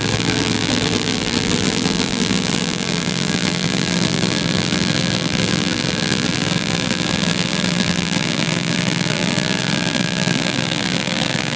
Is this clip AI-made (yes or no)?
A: yes